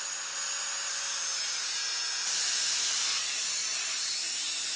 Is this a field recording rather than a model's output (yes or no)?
yes